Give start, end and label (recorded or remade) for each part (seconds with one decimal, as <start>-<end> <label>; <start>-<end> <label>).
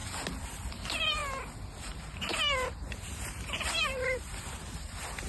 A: 0.0-0.7 recorded; 0.7-1.2 remade; 1.2-1.8 recorded; 1.8-5.3 remade